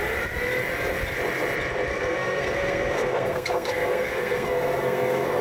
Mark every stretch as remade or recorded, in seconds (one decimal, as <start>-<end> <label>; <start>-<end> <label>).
0.0-1.9 recorded; 1.9-5.4 remade